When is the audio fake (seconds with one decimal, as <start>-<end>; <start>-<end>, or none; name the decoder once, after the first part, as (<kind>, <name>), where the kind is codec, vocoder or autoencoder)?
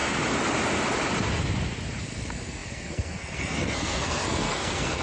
2.0-5.0 (codec, SNAC)